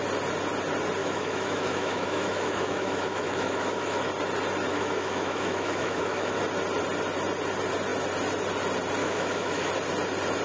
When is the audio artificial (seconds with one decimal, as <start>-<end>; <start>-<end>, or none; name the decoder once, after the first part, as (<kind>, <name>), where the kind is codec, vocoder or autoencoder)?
1.0-4.1 (autoencoder, DAC-VAE); 4.7-6.4; 9.0-9.7